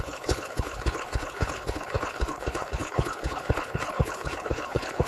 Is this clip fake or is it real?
fake